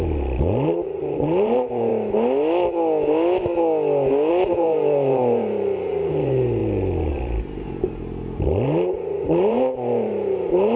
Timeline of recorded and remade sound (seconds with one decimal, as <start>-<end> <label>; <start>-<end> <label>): 0.0-1.9 remade; 1.9-4.3 recorded; 4.3-10.8 remade